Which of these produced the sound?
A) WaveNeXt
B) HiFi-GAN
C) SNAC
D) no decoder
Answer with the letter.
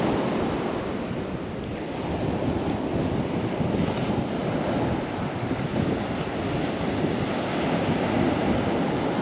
D